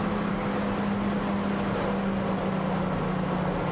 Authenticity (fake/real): real